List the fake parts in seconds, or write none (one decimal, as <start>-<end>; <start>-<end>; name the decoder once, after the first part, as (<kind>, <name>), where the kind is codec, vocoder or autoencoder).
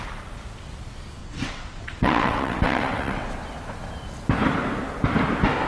1.2-3.3 (vocoder, WaveNeXt)